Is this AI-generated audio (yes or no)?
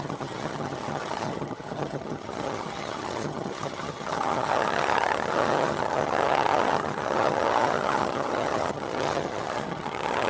yes